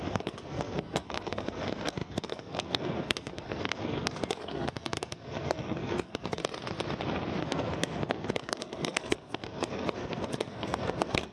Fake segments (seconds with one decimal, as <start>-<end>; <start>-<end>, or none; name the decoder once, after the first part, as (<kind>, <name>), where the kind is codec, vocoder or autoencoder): 0.0-6.4 (codec, SNAC); 7.4-11.3